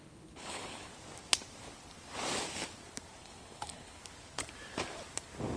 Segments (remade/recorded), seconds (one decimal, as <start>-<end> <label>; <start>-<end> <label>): 0.0-0.9 remade; 0.9-3.2 recorded; 3.2-4.0 remade; 4.0-5.6 recorded